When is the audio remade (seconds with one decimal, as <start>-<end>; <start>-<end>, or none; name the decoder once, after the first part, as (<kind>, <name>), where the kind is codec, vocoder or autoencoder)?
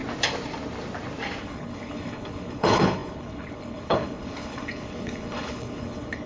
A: 1.4-6.3 (codec, HILCodec)